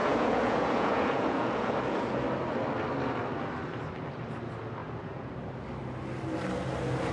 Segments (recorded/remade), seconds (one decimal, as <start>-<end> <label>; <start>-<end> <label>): 0.0-2.1 remade; 2.1-4.8 recorded; 4.8-5.3 remade; 5.3-7.1 recorded